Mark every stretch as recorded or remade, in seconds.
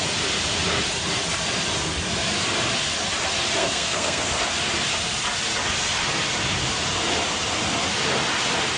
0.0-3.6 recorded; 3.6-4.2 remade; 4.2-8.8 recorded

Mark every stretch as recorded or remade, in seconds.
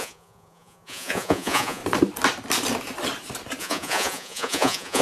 0.0-1.8 remade; 1.8-3.6 recorded; 3.6-5.0 remade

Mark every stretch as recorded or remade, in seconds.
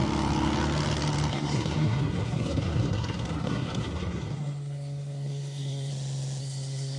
0.0-1.3 recorded; 1.3-5.9 remade; 5.9-6.4 recorded; 6.4-7.0 remade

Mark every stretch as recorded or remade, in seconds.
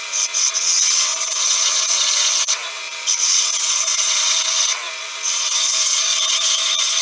0.0-7.0 remade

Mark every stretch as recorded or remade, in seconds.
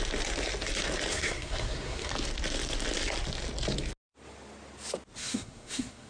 0.0-1.1 recorded; 1.1-2.1 remade; 2.1-5.2 recorded; 5.2-6.1 remade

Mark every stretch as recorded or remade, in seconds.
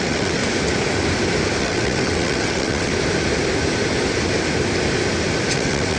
0.0-0.4 remade; 0.4-1.6 recorded; 1.6-2.9 remade; 2.9-5.5 recorded; 5.5-6.0 remade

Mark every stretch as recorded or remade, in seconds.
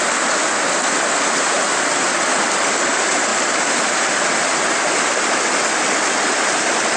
0.0-7.0 recorded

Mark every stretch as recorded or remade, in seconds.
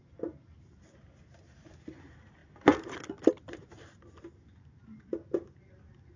0.0-6.2 recorded